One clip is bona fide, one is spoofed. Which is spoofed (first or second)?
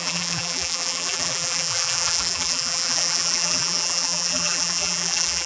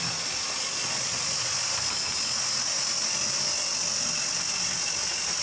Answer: first